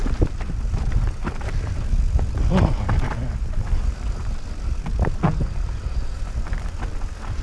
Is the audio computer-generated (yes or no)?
no